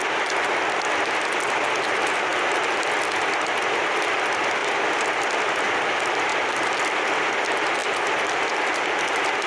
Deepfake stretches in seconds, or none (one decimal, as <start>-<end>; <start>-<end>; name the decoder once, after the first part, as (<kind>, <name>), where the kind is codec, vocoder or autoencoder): none